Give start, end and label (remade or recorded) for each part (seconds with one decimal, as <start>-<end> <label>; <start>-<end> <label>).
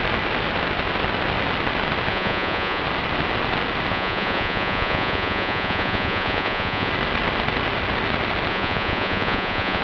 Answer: 0.0-2.1 recorded; 2.1-2.8 remade; 2.8-3.9 recorded; 3.9-6.9 remade; 6.9-8.5 recorded; 8.5-9.8 remade